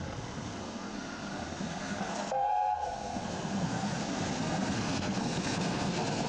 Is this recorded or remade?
remade